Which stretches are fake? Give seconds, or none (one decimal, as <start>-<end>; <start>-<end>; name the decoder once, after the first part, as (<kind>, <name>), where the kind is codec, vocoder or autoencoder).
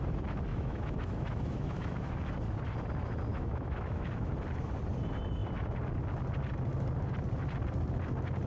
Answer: 0.5-2.1 (autoencoder, DAC-VAE); 3.3-4.3